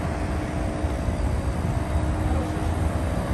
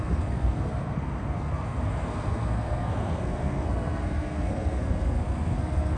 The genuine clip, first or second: first